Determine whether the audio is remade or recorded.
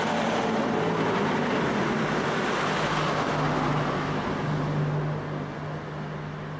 recorded